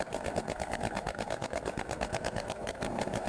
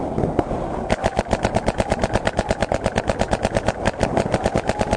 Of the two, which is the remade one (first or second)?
first